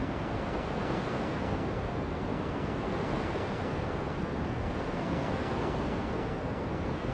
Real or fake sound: fake